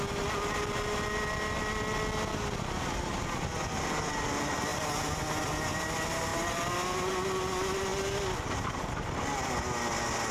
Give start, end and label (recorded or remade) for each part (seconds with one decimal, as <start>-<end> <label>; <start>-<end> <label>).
0.0-10.3 recorded